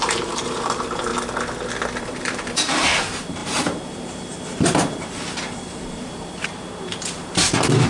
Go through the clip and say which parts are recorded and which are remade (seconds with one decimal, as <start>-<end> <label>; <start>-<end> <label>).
0.0-1.1 remade; 1.1-2.0 recorded; 2.0-7.9 remade